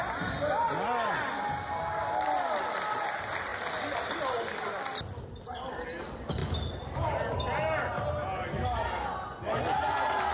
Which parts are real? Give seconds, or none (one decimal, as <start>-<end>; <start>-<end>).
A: 0.0-5.3; 5.8-10.3